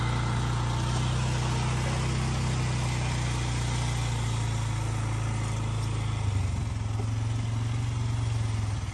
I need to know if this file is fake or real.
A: real